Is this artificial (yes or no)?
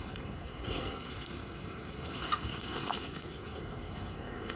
yes